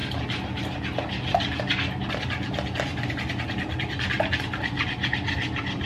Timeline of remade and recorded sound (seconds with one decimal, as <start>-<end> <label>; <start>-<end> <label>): 0.0-5.9 recorded